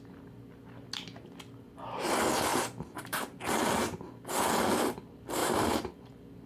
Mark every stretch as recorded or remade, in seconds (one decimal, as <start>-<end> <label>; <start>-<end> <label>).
0.0-2.5 recorded; 2.5-3.4 remade; 3.4-5.4 recorded; 5.4-6.0 remade; 6.0-6.5 recorded

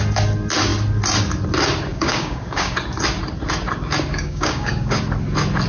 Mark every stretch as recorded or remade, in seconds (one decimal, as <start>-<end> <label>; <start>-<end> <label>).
0.0-1.9 recorded; 1.9-2.7 remade; 2.7-4.1 recorded; 4.1-5.0 remade; 5.0-5.7 recorded

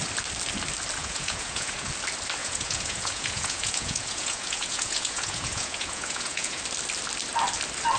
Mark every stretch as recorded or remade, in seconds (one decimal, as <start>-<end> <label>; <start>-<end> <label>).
0.0-1.0 recorded; 1.0-1.9 remade; 1.9-2.4 recorded; 2.4-6.6 remade; 6.6-8.0 recorded

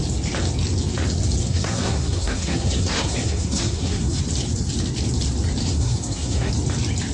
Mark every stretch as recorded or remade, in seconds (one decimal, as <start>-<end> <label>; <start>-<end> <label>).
0.0-1.4 recorded; 1.4-4.2 remade; 4.2-5.6 recorded; 5.6-6.5 remade; 6.5-7.1 recorded

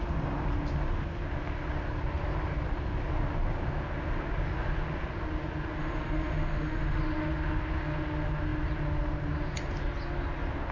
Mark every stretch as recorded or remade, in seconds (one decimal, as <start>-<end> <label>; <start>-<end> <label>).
0.0-5.8 recorded; 5.8-7.0 remade; 7.0-10.7 recorded

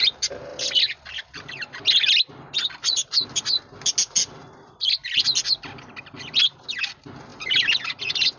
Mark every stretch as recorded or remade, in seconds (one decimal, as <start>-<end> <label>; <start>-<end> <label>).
0.0-0.5 recorded; 0.5-1.5 remade; 1.5-8.4 recorded

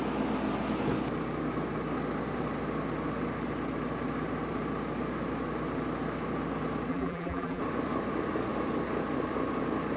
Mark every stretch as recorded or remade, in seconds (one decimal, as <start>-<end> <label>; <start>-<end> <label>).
0.0-6.9 recorded; 6.9-7.6 remade; 7.6-10.0 recorded

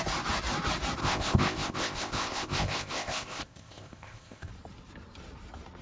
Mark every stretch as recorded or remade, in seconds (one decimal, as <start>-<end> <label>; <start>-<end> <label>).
0.0-1.0 recorded; 1.0-4.5 remade; 4.5-5.8 recorded